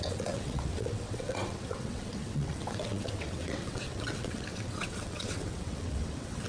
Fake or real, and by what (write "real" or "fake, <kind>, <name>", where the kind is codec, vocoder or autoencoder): fake, vocoder, WaveNeXt